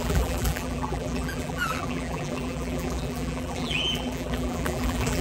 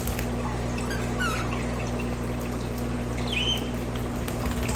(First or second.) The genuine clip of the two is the second